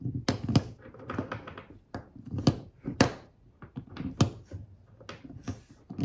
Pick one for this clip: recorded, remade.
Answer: recorded